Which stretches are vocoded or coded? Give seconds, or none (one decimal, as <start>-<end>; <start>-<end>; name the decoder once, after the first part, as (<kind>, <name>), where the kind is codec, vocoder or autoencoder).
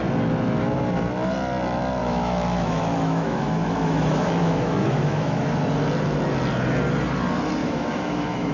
2.0-5.5 (autoencoder, DAC-VAE); 7.6-8.5